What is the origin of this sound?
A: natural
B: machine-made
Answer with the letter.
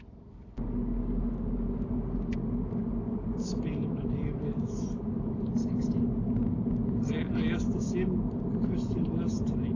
A